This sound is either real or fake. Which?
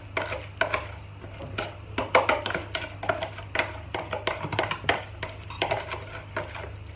real